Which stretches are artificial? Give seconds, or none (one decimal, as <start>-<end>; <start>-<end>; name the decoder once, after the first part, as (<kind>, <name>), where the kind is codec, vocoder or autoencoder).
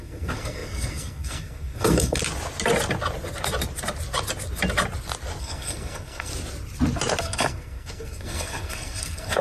0.0-2.2 (codec, SNAC); 5.4-6.3; 7.2-9.4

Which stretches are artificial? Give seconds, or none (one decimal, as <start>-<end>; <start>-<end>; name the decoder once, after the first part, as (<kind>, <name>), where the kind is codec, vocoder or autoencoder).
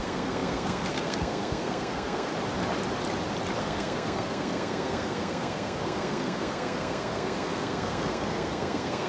0.0-2.3 (codec, SNAC); 3.6-9.1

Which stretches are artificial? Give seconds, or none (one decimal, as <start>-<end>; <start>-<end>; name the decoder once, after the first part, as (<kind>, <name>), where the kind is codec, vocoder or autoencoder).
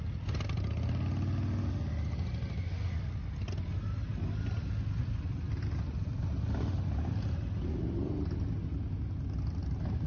none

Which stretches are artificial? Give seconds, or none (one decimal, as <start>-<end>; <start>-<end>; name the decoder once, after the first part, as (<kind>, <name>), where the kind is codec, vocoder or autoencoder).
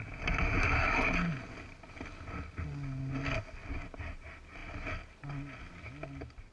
none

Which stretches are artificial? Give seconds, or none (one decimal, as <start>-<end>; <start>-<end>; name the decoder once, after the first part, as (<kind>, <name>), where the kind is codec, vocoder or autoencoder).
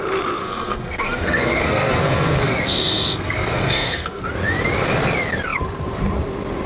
0.4-4.2 (codec, SNAC)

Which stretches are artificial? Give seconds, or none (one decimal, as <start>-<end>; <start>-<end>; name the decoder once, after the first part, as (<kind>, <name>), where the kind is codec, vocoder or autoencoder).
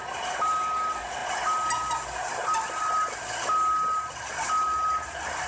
none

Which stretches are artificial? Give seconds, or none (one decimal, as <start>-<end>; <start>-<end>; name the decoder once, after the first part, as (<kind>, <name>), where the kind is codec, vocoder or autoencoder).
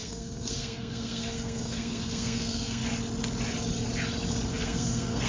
0.0-2.8 (codec, SNAC); 4.5-5.3